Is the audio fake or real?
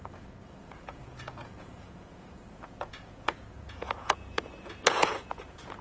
fake